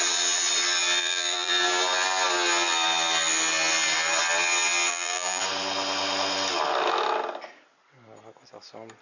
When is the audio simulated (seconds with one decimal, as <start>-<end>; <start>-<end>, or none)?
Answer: 1.0-1.5; 4.9-5.4